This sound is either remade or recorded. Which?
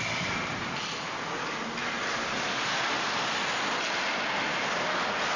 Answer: recorded